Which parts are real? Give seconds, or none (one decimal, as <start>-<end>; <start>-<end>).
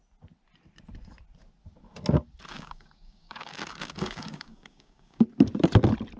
0.0-2.5; 5.2-6.2